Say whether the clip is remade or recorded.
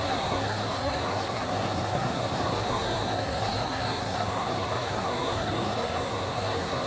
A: remade